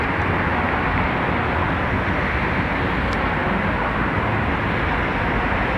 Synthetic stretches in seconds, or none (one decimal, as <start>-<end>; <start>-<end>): none